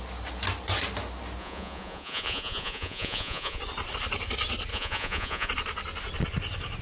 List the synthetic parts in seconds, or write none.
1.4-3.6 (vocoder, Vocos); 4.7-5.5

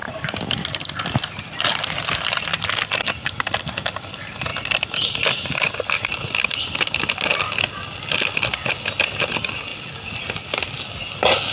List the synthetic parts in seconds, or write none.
0.0-2.0 (vocoder, BigVGAN v2); 4.5-6.6

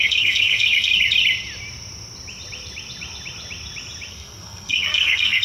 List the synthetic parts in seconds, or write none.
0.0-0.9 (codec, SNAC); 4.1-5.4

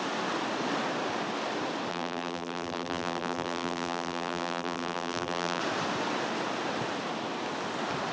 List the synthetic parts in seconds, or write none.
1.9-5.6 (vocoder, BigVGAN v2)

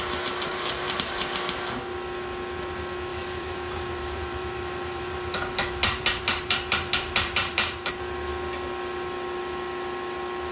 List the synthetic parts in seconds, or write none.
0.5-1.3 (vocoder, BigVGAN v2); 3.1-7.9